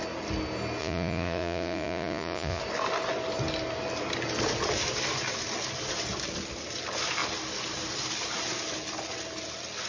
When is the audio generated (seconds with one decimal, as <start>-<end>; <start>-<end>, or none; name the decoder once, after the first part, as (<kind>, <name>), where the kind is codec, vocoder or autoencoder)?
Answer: 0.8-2.6 (vocoder, Vocos)

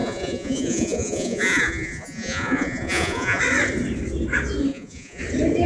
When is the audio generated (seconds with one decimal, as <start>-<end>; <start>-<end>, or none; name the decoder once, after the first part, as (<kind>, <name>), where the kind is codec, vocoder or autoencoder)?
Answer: 0.0-3.4 (vocoder, Vocos); 4.7-5.2

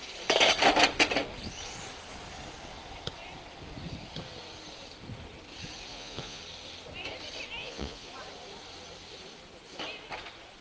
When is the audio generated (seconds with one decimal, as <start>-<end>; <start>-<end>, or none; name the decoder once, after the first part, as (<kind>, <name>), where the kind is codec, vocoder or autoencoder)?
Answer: 5.9-6.4 (vocoder, Vocos); 7.6-8.1

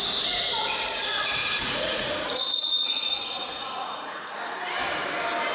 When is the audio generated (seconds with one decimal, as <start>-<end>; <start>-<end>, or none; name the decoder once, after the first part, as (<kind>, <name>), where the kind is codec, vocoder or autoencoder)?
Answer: 1.1-4.4 (vocoder, Vocos)

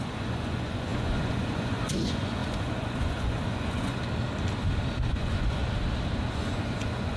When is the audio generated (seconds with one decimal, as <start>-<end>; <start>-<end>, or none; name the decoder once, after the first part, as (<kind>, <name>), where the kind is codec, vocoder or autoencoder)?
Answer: 0.0-4.0 (vocoder, Vocos); 5.1-5.6; 6.3-7.2

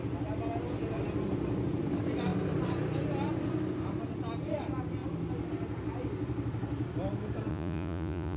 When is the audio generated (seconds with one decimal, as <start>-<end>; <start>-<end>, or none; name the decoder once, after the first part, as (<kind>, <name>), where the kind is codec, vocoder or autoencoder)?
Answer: 7.5-8.4 (vocoder, Vocos)

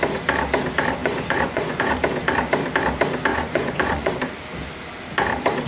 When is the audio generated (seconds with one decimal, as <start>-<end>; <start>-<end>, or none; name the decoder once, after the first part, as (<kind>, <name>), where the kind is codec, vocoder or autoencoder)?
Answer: 1.0-2.0 (vocoder, Vocos); 3.3-4.1